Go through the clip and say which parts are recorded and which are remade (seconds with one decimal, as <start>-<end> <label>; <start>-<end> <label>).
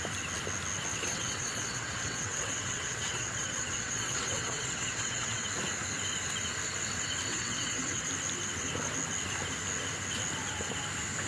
0.0-0.9 recorded; 0.9-5.5 remade; 5.5-7.3 recorded; 7.3-8.1 remade; 8.1-11.3 recorded